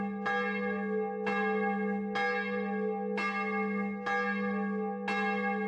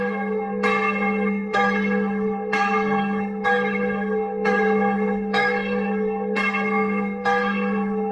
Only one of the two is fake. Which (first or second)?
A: second